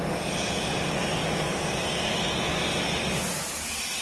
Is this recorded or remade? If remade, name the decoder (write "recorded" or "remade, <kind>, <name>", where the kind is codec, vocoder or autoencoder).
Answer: recorded